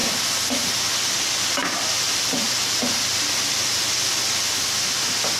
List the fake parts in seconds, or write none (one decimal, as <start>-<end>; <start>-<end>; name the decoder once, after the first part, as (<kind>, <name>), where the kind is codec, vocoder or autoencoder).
none